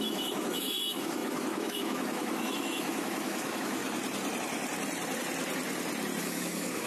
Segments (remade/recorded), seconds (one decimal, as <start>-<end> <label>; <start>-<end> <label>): 0.0-3.8 remade; 3.8-6.2 recorded; 6.2-6.9 remade